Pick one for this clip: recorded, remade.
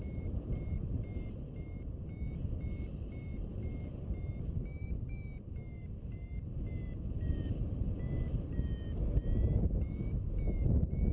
recorded